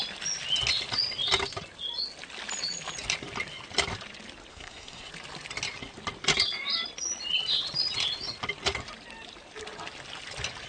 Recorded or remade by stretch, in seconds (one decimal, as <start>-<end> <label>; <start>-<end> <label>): 0.0-4.5 recorded; 4.5-5.1 remade; 5.1-10.7 recorded